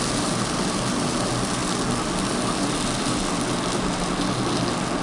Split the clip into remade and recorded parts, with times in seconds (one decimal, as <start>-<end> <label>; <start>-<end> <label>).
0.0-5.0 recorded